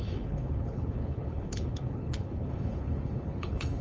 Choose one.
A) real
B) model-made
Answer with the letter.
B